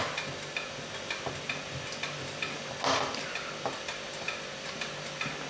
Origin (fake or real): real